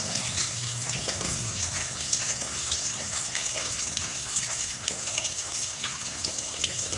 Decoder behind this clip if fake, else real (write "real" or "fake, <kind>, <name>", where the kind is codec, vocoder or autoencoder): fake, codec, SNAC